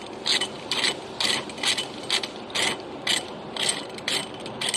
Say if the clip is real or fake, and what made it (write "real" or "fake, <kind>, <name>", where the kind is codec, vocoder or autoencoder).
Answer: real